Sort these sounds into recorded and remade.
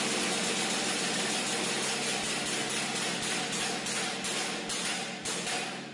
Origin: recorded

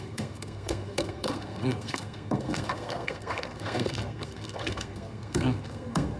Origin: remade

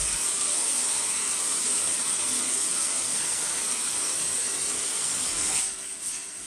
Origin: remade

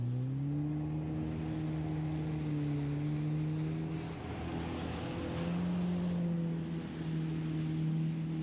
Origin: recorded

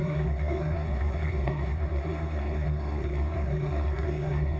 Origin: remade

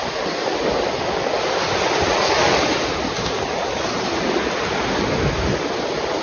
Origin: recorded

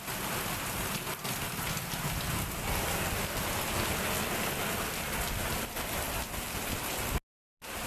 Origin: recorded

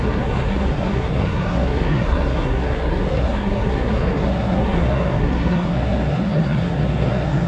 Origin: remade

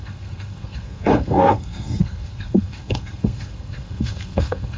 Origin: remade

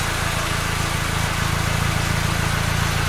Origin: recorded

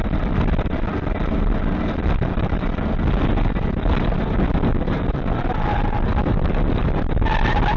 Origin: recorded